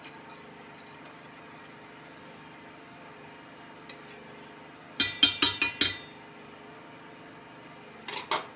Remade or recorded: recorded